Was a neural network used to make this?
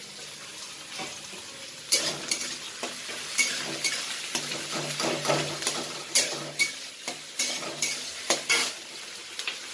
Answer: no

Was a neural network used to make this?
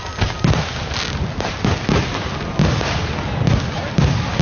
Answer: no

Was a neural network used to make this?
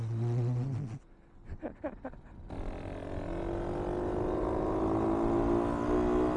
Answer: no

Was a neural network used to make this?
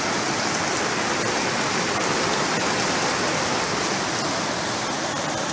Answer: no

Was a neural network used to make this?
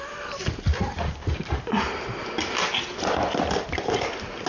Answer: no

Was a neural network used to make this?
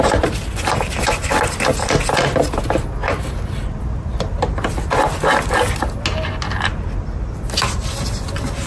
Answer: no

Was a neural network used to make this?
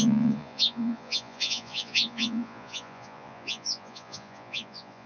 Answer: yes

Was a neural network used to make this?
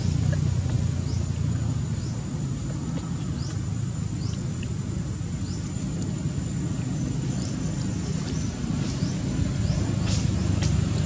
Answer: no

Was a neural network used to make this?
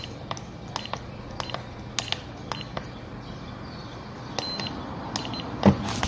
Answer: no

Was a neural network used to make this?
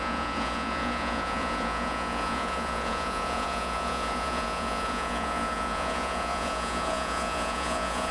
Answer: yes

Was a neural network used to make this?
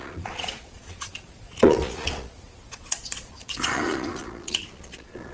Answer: yes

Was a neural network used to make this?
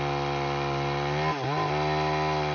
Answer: no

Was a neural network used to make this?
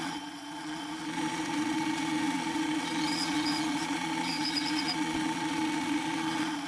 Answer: yes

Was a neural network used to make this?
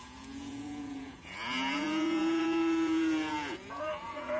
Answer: yes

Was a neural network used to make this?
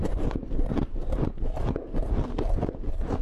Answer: no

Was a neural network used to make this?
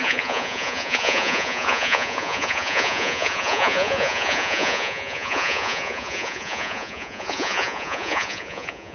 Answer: yes